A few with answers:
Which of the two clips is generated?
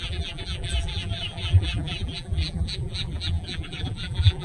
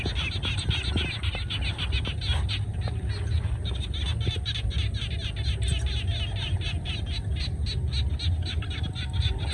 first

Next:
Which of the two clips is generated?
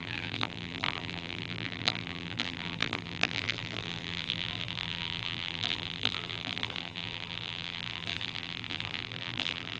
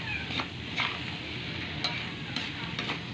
first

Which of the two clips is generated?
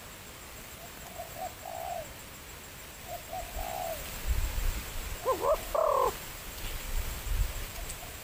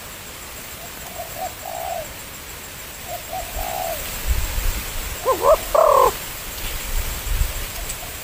second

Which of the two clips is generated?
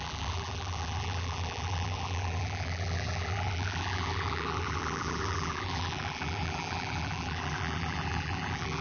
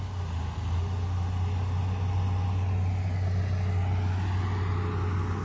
first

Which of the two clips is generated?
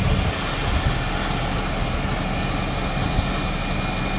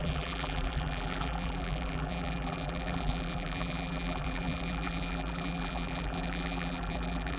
second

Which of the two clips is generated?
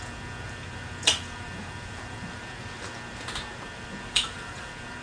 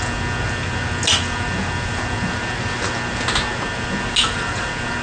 first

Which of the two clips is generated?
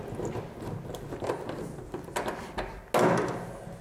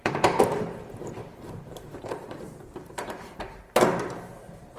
second